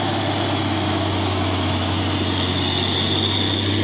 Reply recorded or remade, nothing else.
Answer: recorded